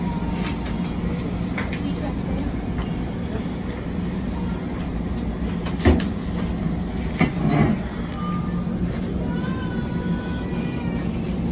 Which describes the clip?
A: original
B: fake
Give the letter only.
A